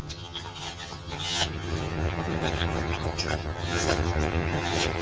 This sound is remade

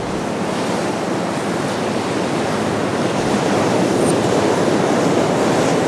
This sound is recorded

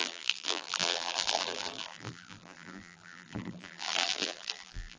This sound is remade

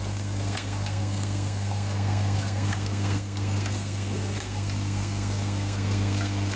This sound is remade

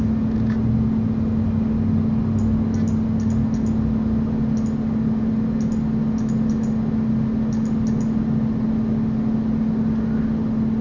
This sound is recorded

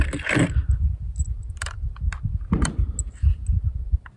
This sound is recorded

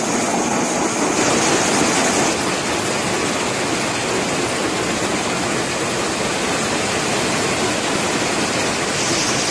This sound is recorded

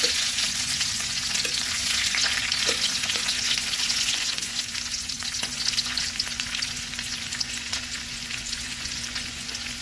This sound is remade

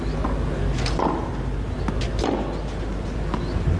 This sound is recorded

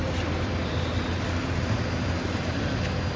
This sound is recorded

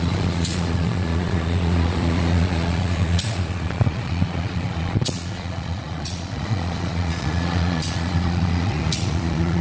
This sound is remade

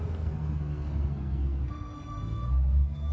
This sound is remade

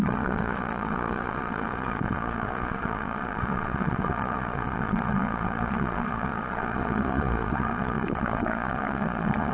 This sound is remade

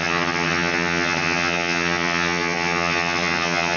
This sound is remade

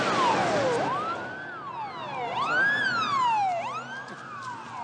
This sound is recorded